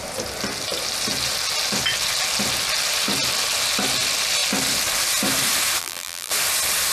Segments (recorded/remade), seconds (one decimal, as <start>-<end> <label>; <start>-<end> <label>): 0.0-5.8 recorded; 5.8-6.3 remade; 6.3-6.9 recorded

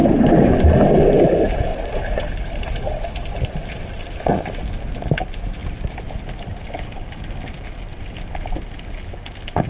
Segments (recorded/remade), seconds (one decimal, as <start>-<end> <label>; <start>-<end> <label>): 0.0-9.7 recorded

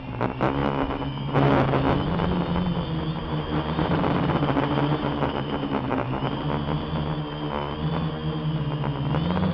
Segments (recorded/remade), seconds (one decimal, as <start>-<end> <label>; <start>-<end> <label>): 0.0-3.2 recorded; 3.2-6.4 remade; 6.4-9.5 recorded

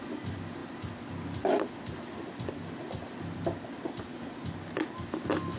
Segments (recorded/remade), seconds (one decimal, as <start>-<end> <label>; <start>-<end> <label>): 0.0-5.6 recorded

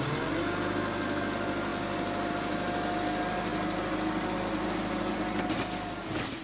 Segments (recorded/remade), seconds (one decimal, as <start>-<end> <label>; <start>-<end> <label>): 0.0-3.5 recorded; 3.5-6.4 remade

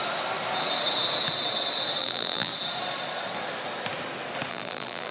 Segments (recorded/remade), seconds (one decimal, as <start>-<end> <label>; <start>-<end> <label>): 0.0-2.0 recorded; 2.0-2.5 remade; 2.5-4.5 recorded; 4.5-5.1 remade

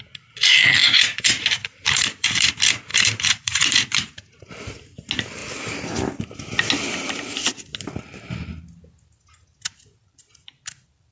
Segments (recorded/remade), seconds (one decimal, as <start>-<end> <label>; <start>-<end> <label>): 0.0-0.8 recorded; 0.8-2.5 remade; 2.5-2.9 recorded; 2.9-4.5 remade; 4.5-11.1 recorded